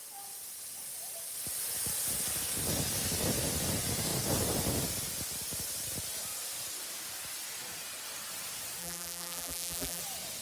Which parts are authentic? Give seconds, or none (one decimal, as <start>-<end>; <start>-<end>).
0.0-8.8; 10.0-10.4